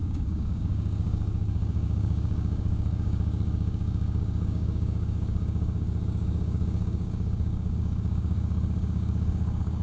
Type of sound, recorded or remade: remade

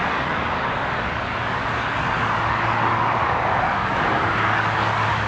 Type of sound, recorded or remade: remade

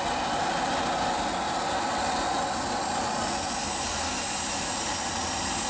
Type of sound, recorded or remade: recorded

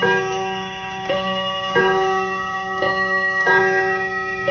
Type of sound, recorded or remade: remade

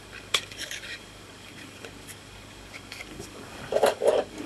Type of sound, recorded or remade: remade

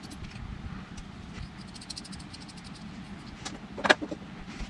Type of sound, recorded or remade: recorded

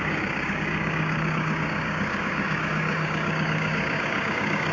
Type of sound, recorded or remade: remade